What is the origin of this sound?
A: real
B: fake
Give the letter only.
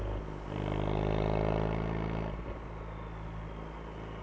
A